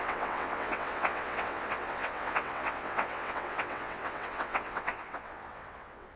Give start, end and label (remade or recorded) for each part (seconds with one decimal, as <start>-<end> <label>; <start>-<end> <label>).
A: 0.0-6.2 remade